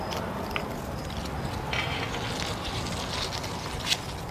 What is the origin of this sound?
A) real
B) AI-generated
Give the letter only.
A